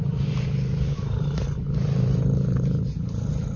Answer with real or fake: fake